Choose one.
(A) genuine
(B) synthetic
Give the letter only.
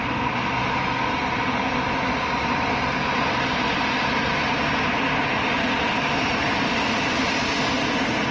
A